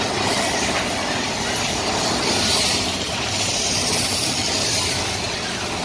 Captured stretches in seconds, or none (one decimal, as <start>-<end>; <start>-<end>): 0.0-3.1; 4.2-5.8